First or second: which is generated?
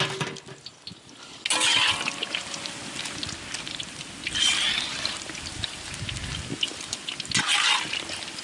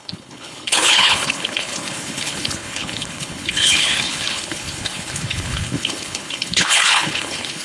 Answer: second